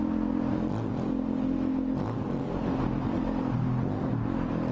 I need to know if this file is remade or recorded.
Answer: recorded